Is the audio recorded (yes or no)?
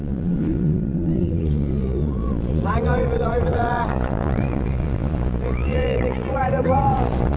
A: no